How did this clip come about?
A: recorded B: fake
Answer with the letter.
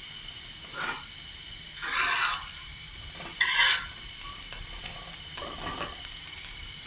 B